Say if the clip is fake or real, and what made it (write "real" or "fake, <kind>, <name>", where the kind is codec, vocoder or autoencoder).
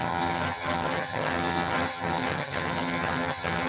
fake, vocoder, HiFi-GAN